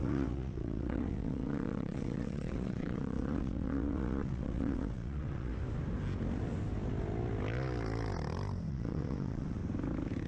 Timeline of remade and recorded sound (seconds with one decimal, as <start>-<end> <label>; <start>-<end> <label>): 0.0-5.5 remade; 5.5-8.7 recorded; 8.7-9.6 remade; 9.6-10.3 recorded